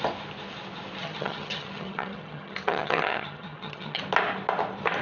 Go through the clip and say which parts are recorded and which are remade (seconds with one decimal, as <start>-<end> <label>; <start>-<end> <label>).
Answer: 0.0-1.0 recorded; 1.0-4.0 remade; 4.0-5.0 recorded